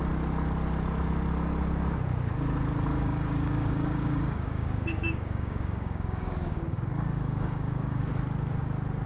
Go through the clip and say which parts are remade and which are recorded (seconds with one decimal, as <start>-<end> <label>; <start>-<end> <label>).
0.0-2.9 recorded; 2.9-8.0 remade; 8.0-9.1 recorded